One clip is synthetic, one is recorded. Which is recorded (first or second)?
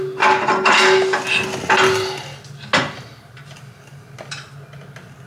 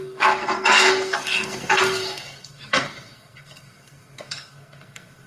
first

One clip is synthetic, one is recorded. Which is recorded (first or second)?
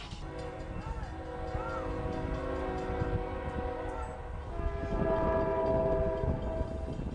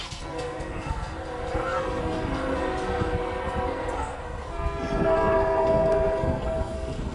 first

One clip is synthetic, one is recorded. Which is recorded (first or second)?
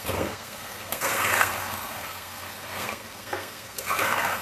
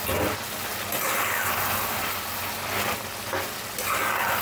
second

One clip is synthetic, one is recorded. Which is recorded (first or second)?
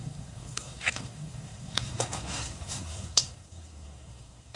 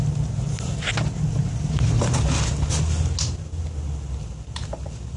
second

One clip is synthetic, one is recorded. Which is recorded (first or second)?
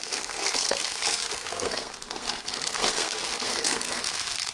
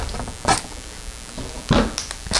second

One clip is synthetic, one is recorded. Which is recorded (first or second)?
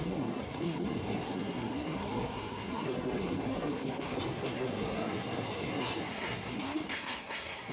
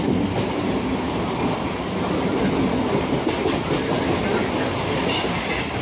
second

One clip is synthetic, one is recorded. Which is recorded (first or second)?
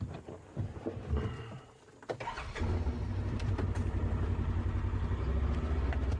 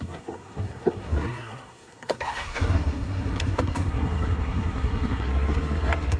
first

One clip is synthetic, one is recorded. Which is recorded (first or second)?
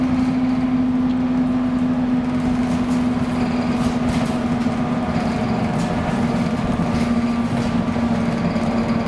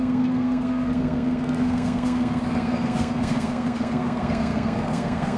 first